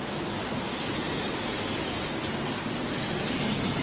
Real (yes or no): yes